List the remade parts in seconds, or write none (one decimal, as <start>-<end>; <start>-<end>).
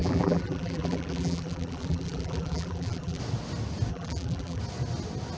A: 0.0-3.2; 3.9-4.6